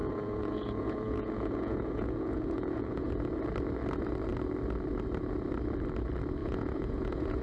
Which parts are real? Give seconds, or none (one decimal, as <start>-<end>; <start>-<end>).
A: 3.1-6.4